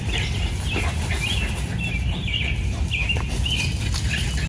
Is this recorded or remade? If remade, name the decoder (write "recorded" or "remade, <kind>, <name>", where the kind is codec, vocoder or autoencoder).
recorded